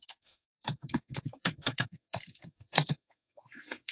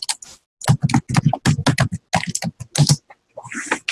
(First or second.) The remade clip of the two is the first